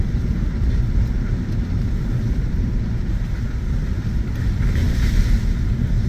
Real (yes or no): yes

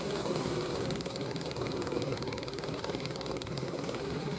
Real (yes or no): no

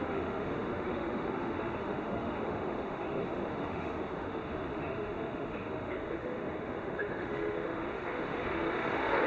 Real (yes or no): no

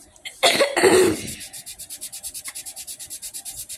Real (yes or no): no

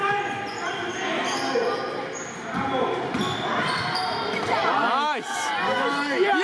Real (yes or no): yes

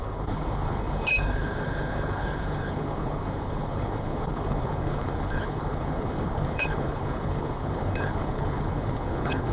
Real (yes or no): no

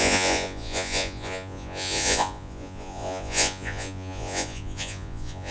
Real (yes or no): no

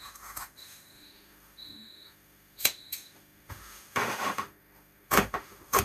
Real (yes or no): no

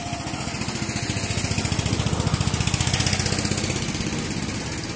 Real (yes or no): yes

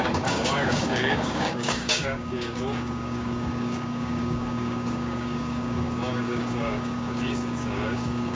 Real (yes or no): no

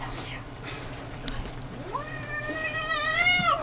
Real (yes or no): no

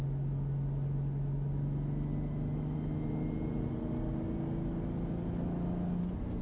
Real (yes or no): yes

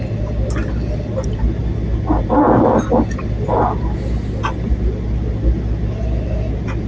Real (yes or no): yes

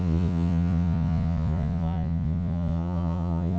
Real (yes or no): no